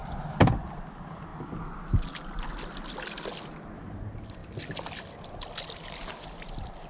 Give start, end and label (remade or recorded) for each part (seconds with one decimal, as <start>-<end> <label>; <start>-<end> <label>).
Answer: 0.0-0.9 recorded; 0.9-1.3 remade; 1.3-4.0 recorded; 4.0-4.4 remade; 4.4-5.1 recorded; 5.1-6.9 remade

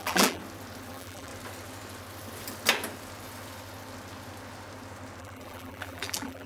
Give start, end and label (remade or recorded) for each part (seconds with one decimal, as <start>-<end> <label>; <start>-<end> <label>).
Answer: 0.0-0.4 remade; 0.4-0.9 recorded; 0.9-1.3 remade; 1.3-5.2 recorded; 5.2-6.5 remade

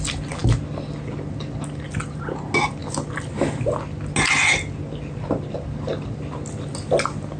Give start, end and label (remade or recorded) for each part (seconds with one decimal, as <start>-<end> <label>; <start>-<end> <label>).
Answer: 0.0-7.4 recorded

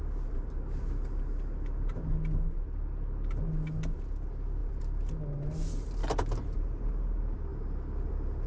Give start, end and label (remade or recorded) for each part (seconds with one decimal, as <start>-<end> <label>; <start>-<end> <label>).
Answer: 0.0-4.6 recorded; 4.6-5.1 remade; 5.1-6.0 recorded; 6.0-6.8 remade; 6.8-8.5 recorded

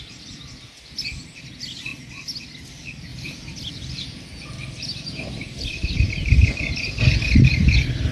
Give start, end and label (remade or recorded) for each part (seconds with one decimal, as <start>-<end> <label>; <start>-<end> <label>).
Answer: 0.0-1.9 remade; 1.9-2.7 recorded; 2.7-8.1 remade

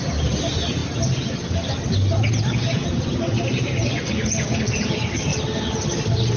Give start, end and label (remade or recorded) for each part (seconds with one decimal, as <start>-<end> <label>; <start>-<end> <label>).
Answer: 0.0-0.8 remade; 0.8-4.6 recorded; 4.6-5.3 remade; 5.3-6.4 recorded

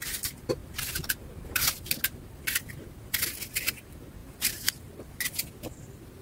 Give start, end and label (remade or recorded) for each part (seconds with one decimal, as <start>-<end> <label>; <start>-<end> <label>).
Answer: 0.0-4.2 recorded; 4.2-4.9 remade; 4.9-6.2 recorded